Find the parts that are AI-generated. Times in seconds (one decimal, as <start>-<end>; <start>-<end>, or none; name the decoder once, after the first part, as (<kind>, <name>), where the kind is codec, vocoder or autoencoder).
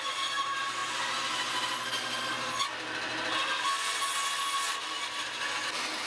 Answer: none